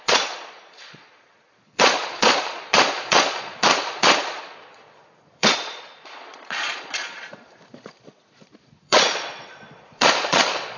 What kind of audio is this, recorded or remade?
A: remade